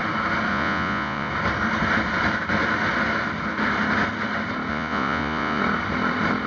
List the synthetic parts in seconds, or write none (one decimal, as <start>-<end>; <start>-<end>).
0.5-1.3; 4.7-5.6